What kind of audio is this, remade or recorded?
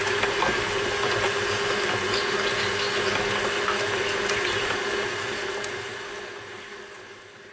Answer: recorded